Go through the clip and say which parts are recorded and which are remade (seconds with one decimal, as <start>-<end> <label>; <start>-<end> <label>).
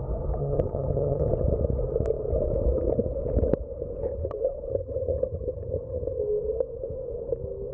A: 0.0-0.4 recorded; 0.4-1.3 remade; 1.3-4.7 recorded; 4.7-6.2 remade; 6.2-7.7 recorded